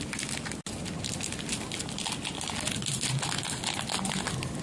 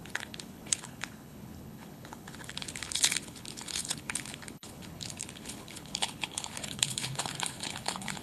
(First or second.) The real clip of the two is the first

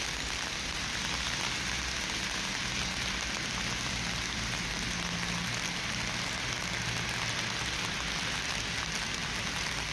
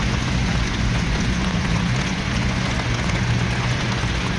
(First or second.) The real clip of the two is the first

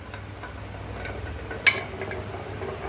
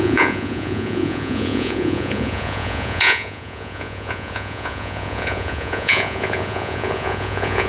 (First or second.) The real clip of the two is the first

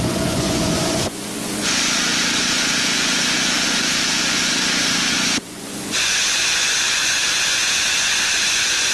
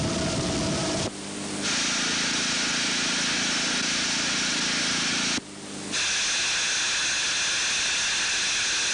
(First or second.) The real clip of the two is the second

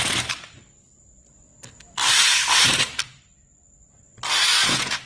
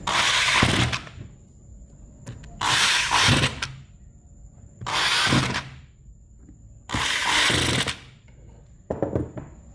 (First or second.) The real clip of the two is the second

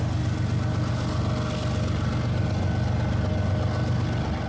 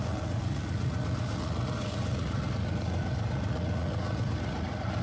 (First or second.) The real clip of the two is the first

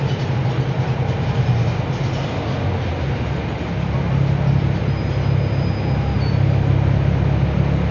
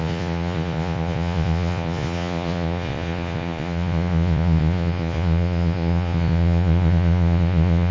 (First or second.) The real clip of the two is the first